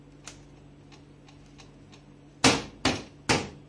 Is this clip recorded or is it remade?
recorded